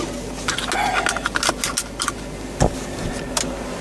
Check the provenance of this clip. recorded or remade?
recorded